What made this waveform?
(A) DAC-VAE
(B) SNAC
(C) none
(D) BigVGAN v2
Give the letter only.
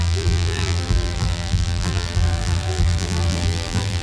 D